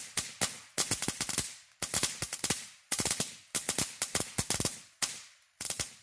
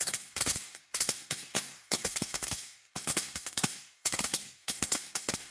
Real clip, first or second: first